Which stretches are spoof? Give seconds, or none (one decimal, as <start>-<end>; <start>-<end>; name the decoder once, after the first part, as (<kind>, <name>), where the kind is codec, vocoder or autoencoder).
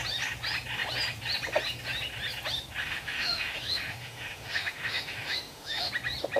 2.8-5.9 (autoencoder, DAC-VAE)